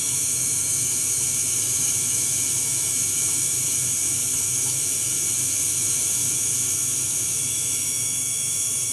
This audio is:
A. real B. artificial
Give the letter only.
B